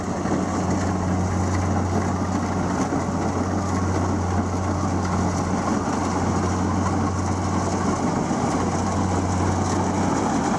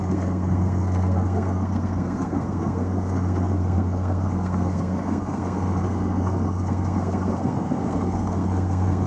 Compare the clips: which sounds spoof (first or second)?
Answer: second